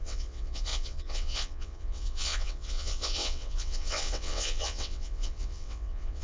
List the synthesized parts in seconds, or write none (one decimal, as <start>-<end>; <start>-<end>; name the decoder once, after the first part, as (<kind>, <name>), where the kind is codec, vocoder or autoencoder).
0.0-6.2 (vocoder, WaveNeXt)